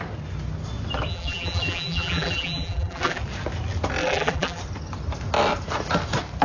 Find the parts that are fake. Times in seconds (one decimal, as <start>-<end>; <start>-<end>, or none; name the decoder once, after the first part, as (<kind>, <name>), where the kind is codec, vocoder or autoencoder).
1.1-3.2 (vocoder, BigVGAN v2); 4.0-4.6